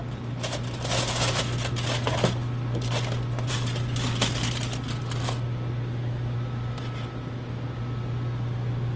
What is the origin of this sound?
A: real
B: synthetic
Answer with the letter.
A